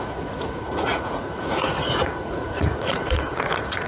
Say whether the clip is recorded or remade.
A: remade